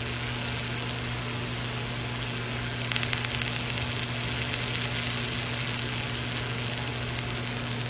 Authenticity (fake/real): real